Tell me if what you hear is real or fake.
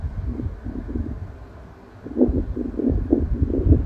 real